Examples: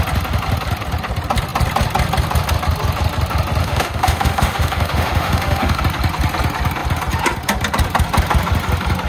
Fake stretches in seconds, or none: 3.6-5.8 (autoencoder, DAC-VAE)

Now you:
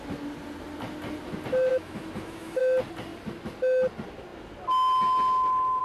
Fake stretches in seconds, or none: 1.7-2.6 (autoencoder, DAC-VAE)

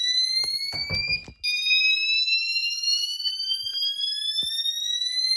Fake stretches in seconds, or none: 2.6-3.3 (autoencoder, DAC-VAE)